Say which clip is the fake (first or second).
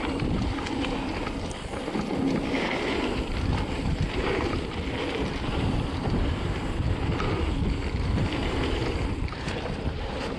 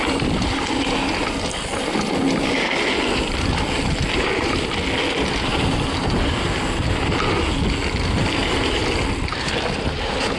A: first